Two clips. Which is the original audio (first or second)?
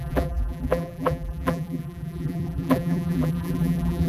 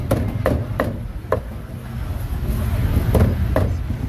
second